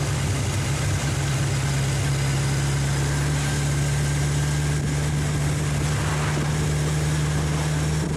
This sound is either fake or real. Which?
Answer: real